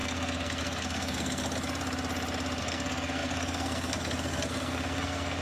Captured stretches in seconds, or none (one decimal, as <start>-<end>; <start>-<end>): 1.4-2.6